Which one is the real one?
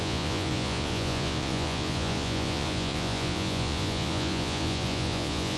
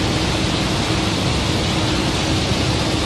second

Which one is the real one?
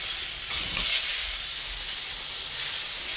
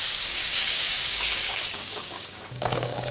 first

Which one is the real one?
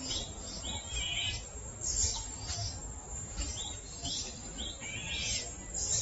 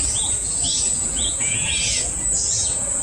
first